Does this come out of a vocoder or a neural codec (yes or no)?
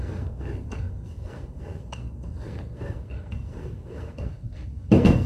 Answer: yes